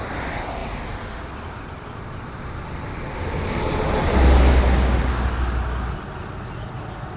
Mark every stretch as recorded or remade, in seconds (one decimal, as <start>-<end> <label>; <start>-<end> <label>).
0.0-7.2 recorded